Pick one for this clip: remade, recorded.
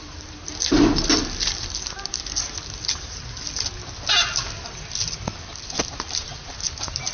recorded